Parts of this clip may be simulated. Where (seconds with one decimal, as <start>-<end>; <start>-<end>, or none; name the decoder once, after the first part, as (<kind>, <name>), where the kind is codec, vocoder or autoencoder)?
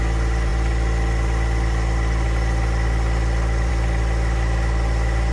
none